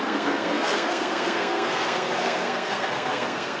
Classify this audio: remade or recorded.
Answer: remade